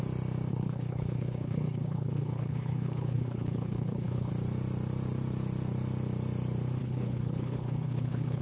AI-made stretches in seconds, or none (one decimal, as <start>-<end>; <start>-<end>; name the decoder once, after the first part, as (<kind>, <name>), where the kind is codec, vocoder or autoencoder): 0.5-4.3 (codec, HILCodec); 6.8-8.4